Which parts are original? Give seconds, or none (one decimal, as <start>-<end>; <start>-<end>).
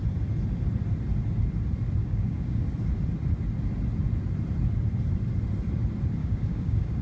0.0-2.0; 2.6-6.2